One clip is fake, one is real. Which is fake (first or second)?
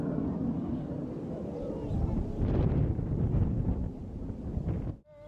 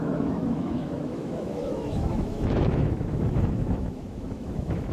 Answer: second